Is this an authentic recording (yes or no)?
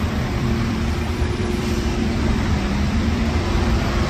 no